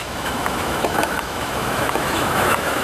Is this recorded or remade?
remade